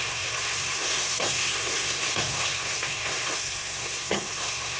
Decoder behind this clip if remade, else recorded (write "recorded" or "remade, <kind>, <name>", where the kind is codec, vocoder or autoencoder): remade, codec, SNAC